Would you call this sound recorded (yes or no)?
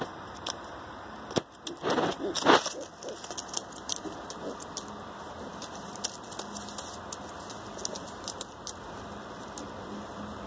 yes